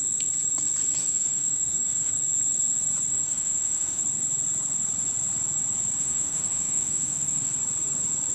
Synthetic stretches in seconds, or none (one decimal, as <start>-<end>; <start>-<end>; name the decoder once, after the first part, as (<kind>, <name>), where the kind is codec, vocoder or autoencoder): 1.0-2.1 (autoencoder, DAC-VAE); 3.1-4.0; 6.0-7.5